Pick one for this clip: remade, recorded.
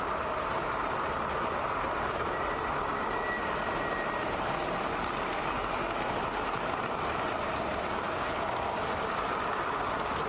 recorded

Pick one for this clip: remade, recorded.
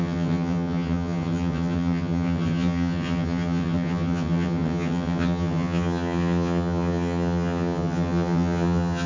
remade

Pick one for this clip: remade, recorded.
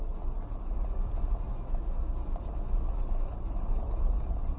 recorded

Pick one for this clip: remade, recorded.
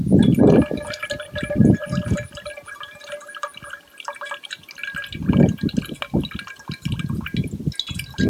recorded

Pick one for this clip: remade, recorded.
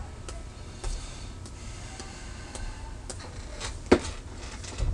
recorded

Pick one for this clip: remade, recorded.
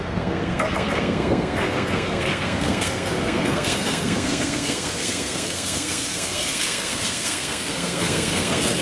remade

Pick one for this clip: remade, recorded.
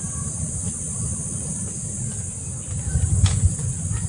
remade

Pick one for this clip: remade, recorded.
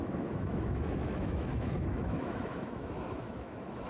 remade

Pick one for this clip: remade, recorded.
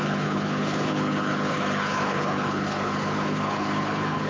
remade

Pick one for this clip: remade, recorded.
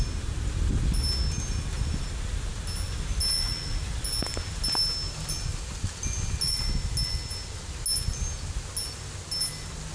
recorded